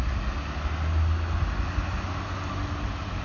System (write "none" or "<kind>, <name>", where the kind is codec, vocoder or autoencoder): none